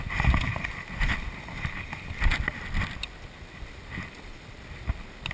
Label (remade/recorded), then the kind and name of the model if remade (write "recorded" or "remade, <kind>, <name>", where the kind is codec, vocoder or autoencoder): recorded